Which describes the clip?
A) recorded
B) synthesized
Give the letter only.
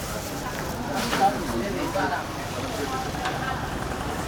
B